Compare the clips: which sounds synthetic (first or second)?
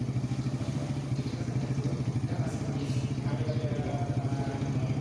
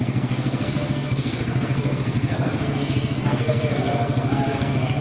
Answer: second